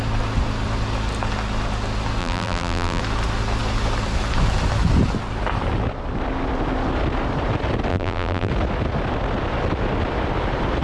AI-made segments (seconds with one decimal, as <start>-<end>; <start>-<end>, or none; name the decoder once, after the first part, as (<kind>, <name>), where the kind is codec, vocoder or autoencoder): 2.2-3.0 (vocoder, BigVGAN v2); 7.9-8.5